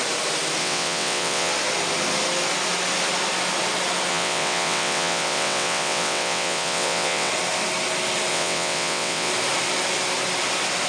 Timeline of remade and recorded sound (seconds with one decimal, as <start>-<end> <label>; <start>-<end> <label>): 0.0-0.6 recorded; 0.6-1.5 remade; 1.5-4.1 recorded; 4.1-7.3 remade; 7.3-8.3 recorded; 8.3-9.3 remade; 9.3-10.9 recorded